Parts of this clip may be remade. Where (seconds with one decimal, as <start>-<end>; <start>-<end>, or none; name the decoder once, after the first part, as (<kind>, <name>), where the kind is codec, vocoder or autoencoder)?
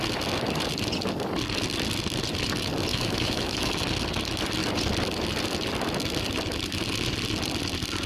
2.9-3.7 (autoencoder, DAC-VAE)